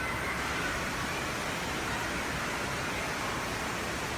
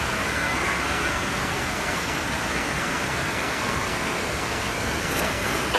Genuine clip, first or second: first